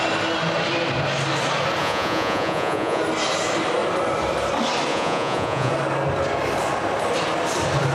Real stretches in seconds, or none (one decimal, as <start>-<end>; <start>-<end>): 0.0-1.8; 3.0-4.9; 5.7-7.9